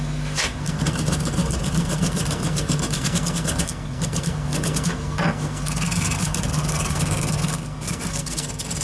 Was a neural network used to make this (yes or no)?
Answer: yes